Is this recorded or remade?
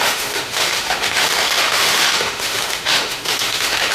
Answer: remade